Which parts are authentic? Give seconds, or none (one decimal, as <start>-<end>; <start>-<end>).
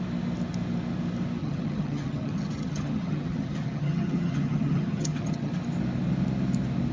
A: 0.0-1.4; 5.5-6.9